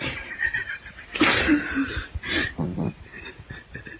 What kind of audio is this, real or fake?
fake